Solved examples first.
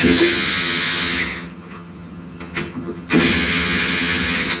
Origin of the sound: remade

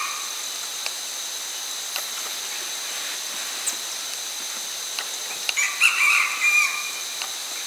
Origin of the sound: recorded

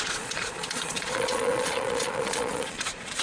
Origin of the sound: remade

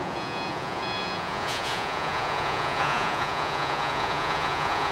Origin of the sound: remade